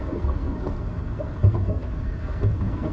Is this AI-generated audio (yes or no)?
yes